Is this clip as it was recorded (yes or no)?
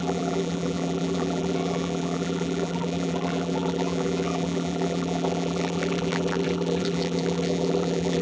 no